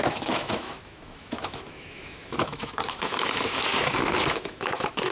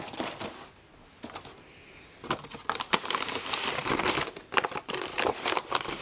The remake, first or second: first